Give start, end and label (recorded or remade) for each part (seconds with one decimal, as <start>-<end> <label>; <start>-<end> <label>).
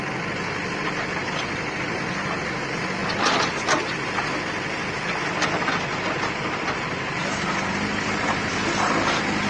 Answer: 0.0-9.5 recorded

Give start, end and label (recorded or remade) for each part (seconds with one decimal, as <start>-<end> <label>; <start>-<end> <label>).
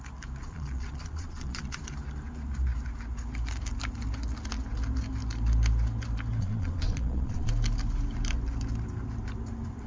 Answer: 0.0-0.4 recorded; 0.4-1.8 remade; 1.8-6.4 recorded; 6.4-7.5 remade; 7.5-9.9 recorded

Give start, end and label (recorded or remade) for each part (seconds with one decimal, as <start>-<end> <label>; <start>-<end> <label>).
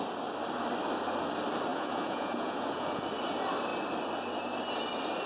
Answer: 0.0-1.7 recorded; 1.7-3.0 remade; 3.0-5.3 recorded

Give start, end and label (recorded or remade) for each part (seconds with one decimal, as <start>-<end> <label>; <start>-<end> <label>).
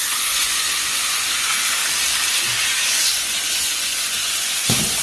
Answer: 0.0-1.8 remade; 1.8-2.3 recorded; 2.3-5.0 remade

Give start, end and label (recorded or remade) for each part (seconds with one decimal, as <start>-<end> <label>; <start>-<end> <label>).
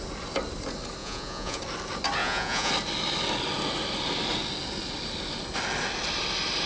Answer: 0.0-1.0 recorded; 1.0-1.6 remade; 1.6-2.2 recorded; 2.2-2.7 remade; 2.7-6.7 recorded